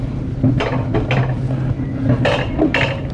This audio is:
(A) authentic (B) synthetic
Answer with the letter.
A